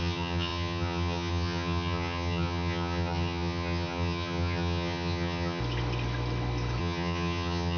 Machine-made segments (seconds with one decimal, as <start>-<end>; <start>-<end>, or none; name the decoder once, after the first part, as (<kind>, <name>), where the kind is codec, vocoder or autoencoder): 0.0-5.6 (vocoder, HiFi-GAN); 6.8-7.8

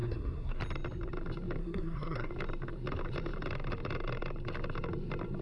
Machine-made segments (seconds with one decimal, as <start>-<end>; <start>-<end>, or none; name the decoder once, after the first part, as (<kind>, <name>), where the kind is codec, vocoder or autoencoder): 0.0-0.6 (codec, SNAC); 1.6-2.3

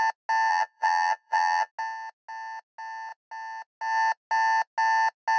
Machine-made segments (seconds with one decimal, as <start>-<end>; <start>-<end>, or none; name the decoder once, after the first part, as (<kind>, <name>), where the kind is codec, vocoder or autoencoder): 0.5-1.7 (vocoder, BigVGAN v2)

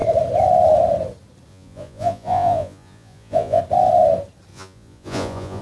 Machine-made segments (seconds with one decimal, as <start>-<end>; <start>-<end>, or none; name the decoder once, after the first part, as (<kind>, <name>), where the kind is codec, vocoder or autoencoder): 1.5-3.6 (vocoder, Vocos); 4.5-5.6